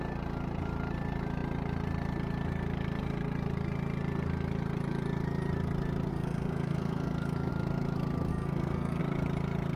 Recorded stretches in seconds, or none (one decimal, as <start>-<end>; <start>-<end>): 0.0-6.1; 7.5-8.3; 9.0-9.8